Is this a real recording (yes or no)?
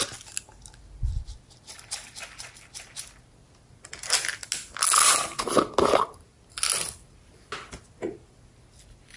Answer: yes